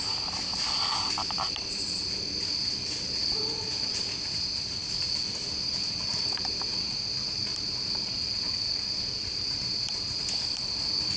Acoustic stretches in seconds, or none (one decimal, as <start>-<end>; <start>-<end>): 0.0-11.2